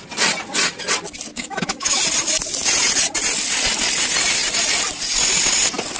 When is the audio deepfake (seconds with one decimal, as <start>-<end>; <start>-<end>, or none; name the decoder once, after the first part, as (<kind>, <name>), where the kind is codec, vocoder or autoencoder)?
1.3-2.0 (autoencoder, DAC-VAE)